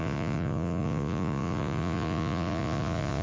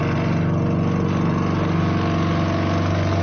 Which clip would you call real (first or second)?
second